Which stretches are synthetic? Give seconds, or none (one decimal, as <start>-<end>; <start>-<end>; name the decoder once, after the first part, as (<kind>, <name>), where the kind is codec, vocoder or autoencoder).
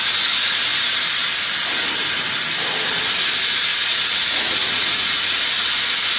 3.7-5.4 (vocoder, Vocos)